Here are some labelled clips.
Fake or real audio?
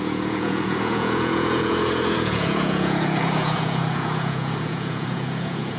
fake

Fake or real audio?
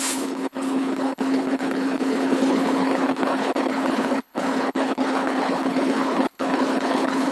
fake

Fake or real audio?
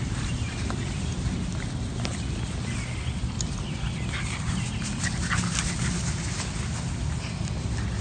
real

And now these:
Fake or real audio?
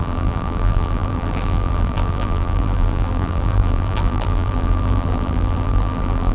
fake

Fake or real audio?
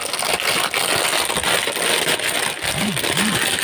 real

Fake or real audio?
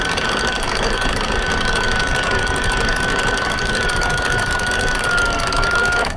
fake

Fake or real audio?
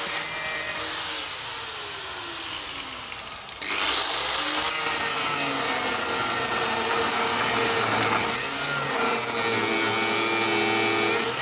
real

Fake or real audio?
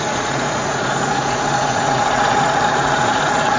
fake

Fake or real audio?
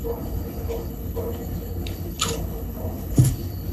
fake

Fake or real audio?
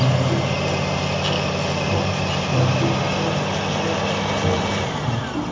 real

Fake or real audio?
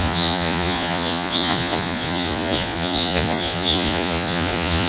fake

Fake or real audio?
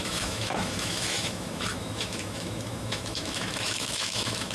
fake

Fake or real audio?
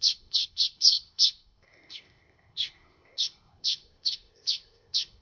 fake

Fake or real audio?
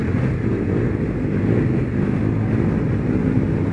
real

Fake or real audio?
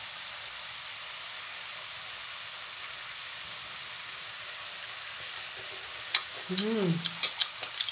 real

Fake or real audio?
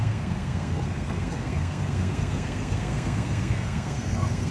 fake